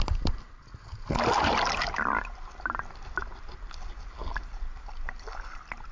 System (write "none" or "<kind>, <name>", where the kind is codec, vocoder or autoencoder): none